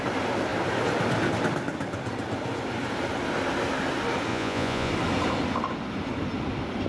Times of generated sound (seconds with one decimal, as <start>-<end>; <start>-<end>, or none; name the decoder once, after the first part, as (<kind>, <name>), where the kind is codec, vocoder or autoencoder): 4.3-4.9 (vocoder, Vocos)